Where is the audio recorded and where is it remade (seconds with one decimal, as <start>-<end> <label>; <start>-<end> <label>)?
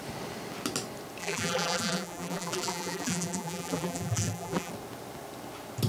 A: 0.0-1.2 recorded; 1.2-4.7 remade; 4.7-5.9 recorded